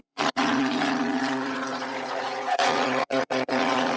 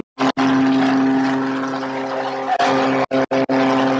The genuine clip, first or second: second